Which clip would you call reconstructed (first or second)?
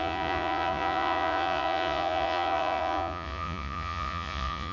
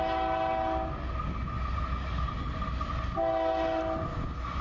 first